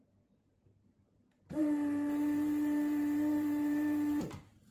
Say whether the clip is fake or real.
fake